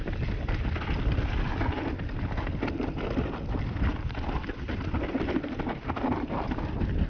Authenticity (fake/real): real